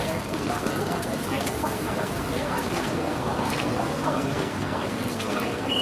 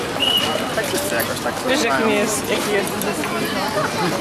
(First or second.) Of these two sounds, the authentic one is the second